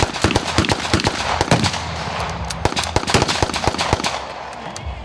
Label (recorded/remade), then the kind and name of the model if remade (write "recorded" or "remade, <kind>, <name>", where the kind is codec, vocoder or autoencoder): recorded